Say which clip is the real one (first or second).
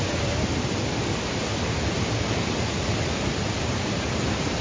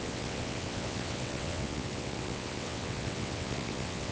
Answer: first